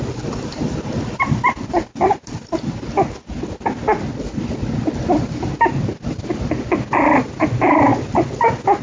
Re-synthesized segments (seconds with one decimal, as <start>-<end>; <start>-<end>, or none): none